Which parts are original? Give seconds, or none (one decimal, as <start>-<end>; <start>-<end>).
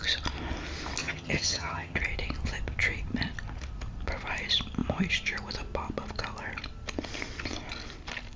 0.0-1.0; 2.0-8.4